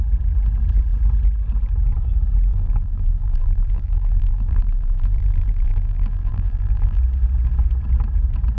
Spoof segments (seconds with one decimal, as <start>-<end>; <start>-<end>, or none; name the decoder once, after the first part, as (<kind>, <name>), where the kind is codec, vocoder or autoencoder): 2.5-7.0 (vocoder, BigVGAN v2)